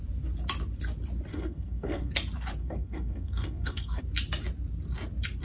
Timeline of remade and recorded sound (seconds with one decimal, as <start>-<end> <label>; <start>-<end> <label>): 0.0-1.3 recorded; 1.3-2.1 remade; 2.1-2.6 recorded; 2.6-4.0 remade; 4.0-5.4 recorded